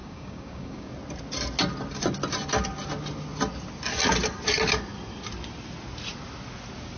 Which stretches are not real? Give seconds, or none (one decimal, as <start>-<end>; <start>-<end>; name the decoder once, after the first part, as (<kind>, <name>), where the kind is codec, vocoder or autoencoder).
0.0-0.9 (codec, DAC)